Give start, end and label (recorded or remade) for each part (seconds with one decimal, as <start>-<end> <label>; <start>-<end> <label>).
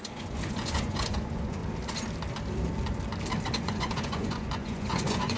0.0-1.6 remade; 1.6-3.6 recorded; 3.6-5.4 remade